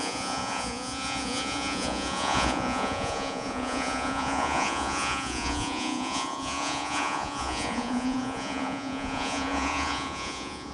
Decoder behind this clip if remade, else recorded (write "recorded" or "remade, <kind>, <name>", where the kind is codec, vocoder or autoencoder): remade, vocoder, Vocos